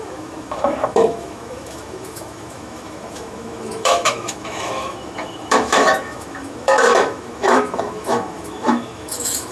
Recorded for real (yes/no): no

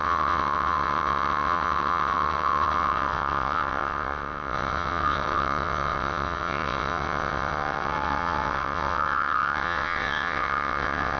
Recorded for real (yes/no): no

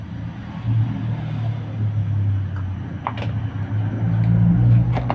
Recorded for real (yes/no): yes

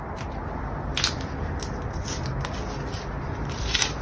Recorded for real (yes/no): yes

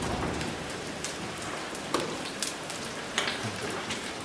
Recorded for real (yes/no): no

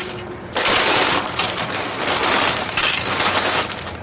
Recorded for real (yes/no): no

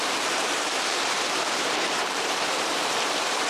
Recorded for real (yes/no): no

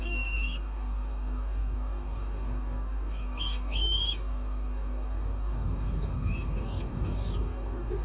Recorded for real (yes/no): no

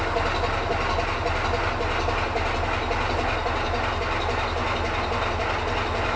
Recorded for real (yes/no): yes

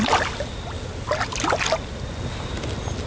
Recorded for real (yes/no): yes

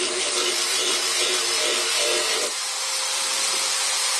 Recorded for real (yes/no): no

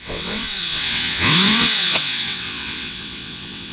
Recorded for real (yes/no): no